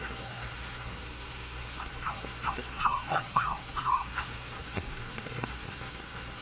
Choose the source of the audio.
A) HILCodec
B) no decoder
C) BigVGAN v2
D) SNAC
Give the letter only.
D